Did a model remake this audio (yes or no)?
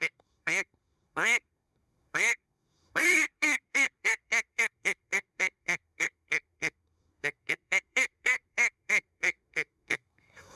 yes